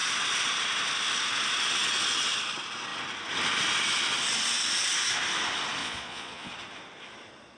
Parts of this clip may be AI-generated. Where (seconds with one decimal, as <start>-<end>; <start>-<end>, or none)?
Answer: 5.8-6.5